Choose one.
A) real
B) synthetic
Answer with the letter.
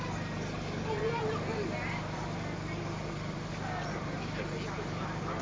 A